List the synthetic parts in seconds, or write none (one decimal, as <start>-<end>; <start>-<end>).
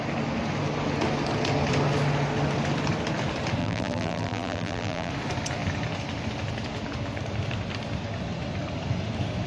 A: 3.6-5.1